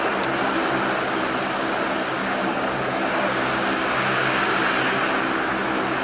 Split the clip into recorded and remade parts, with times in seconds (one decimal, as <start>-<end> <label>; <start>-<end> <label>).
0.0-2.1 recorded; 2.1-4.6 remade; 4.6-6.0 recorded